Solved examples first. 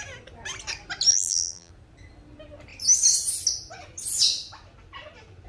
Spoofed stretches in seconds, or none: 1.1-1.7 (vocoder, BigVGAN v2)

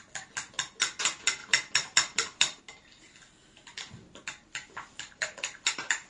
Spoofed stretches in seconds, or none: 1.4-2.6 (vocoder, BigVGAN v2); 3.7-6.1

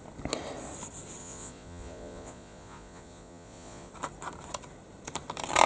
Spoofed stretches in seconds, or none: 1.2-3.9 (vocoder, Vocos)

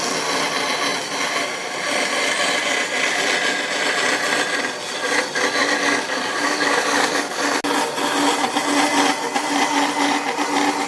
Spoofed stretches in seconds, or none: 5.6-7.4 (codec, DAC)

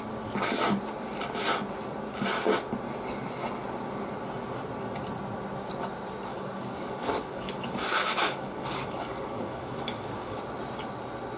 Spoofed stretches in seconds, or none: 6.3-10.4 (codec, DAC)

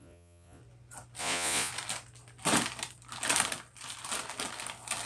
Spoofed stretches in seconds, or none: 0.0-0.6 (vocoder, Vocos); 1.2-1.7

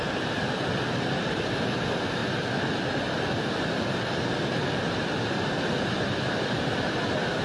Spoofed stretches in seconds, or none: none